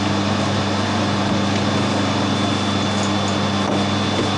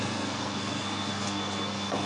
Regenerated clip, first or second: second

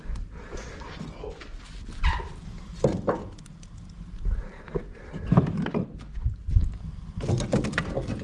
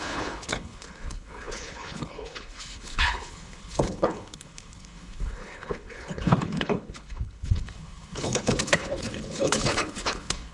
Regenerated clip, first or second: second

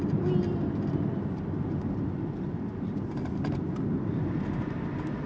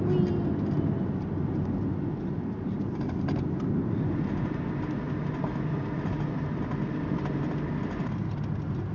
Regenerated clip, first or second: first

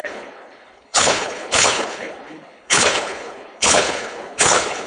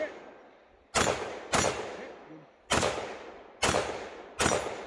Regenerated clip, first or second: first